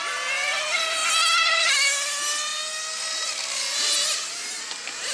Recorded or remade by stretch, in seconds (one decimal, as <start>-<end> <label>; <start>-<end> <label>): 0.0-5.1 recorded